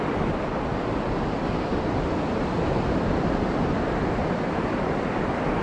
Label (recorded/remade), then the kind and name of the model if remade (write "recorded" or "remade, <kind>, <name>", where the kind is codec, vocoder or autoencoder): recorded